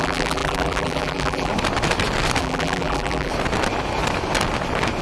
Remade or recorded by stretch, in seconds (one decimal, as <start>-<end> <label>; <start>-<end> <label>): 0.0-1.5 remade; 1.5-2.4 recorded; 2.4-3.3 remade; 3.3-5.0 recorded